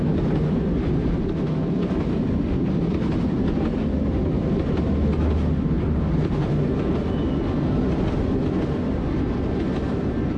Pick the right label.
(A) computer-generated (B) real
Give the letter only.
B